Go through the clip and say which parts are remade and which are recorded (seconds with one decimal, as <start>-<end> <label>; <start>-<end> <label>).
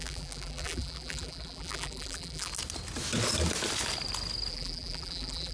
0.0-2.5 remade; 2.5-4.5 recorded; 4.5-5.5 remade